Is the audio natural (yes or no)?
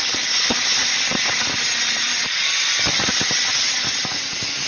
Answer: yes